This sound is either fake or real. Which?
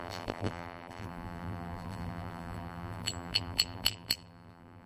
fake